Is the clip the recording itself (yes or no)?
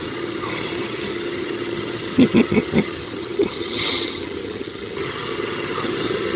no